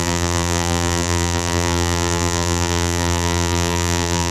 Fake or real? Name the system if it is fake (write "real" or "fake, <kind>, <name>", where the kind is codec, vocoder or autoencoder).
fake, vocoder, BigVGAN v2